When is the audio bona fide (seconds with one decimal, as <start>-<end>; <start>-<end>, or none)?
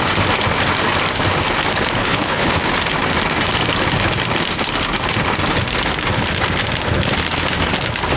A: 0.0-2.0; 2.7-8.2